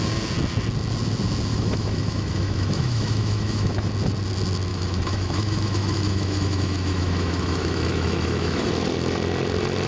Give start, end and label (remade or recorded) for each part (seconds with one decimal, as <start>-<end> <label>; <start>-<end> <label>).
0.0-1.5 recorded; 1.5-3.9 remade; 3.9-4.7 recorded; 4.7-8.7 remade; 8.7-9.9 recorded